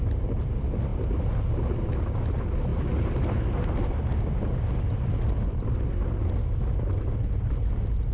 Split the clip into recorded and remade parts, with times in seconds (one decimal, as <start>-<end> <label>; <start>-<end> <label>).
0.0-8.1 recorded